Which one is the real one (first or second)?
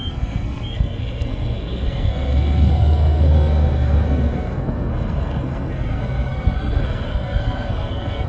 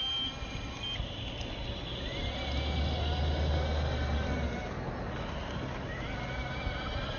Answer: second